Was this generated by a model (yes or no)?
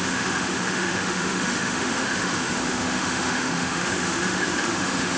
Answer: yes